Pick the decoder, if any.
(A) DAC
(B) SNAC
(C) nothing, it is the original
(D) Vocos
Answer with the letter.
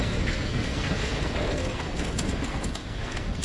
B